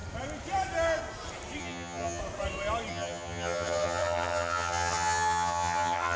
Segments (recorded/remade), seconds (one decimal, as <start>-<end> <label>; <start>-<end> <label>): 0.0-1.6 recorded; 1.6-2.2 remade; 2.2-2.9 recorded; 2.9-6.2 remade